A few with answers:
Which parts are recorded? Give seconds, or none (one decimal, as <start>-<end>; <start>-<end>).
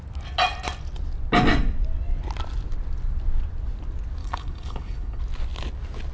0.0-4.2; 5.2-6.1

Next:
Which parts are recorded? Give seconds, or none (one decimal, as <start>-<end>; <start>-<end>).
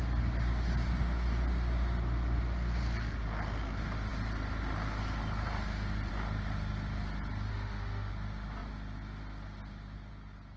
0.0-7.5; 8.1-10.6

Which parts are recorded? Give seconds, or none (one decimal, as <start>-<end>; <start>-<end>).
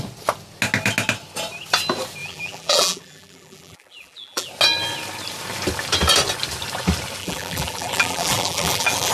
0.0-2.2; 4.5-7.2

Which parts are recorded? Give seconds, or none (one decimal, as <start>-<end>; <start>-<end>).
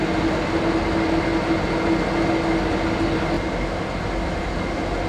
0.0-5.1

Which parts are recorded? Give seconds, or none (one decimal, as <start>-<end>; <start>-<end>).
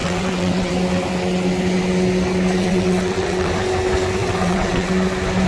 0.7-2.6; 3.5-4.2; 4.9-5.5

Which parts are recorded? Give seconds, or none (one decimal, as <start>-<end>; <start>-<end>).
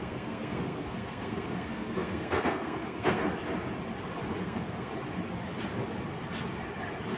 3.2-4.4; 4.9-7.2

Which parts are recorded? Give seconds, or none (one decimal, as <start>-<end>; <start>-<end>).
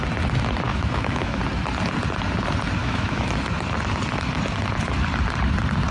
0.0-0.7; 1.4-2.8; 3.3-5.9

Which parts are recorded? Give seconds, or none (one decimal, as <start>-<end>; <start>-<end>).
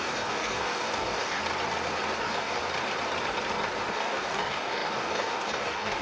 1.4-2.2; 2.6-3.9